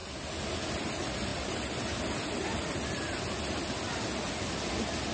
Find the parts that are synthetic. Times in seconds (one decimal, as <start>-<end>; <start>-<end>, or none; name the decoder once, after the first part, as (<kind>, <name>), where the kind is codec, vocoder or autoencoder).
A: none